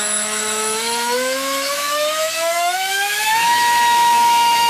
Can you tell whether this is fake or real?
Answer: fake